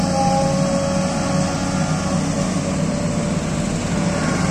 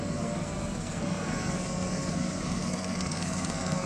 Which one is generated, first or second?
second